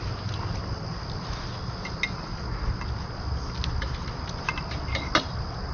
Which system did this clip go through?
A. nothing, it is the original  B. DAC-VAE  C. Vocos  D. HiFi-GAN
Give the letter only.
A